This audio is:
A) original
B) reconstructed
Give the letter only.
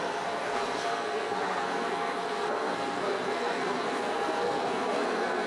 B